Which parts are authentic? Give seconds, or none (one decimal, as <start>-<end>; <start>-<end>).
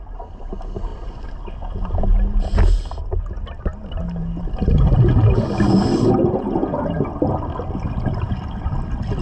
0.0-9.2